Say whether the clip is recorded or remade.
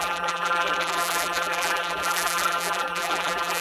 remade